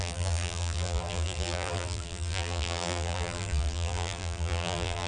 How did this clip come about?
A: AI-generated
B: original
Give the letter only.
A